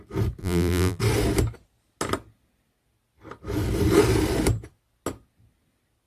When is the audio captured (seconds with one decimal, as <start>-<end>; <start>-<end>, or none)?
0.0-0.4; 1.0-6.1